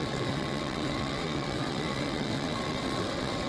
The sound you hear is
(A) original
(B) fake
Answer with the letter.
B